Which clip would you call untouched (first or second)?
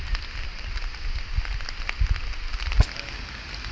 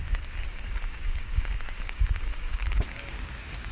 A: first